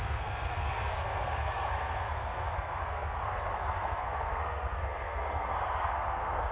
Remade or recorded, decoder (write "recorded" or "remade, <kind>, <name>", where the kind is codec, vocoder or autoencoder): remade, codec, SNAC